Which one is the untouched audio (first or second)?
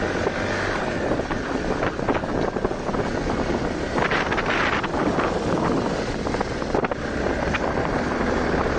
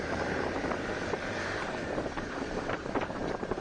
first